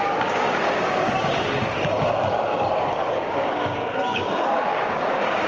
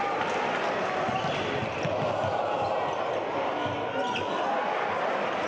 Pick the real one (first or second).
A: second